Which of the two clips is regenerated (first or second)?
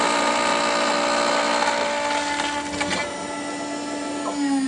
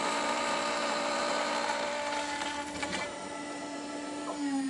second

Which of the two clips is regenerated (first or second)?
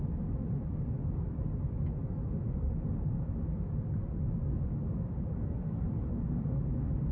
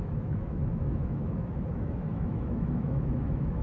second